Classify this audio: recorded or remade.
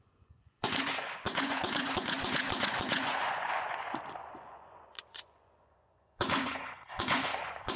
remade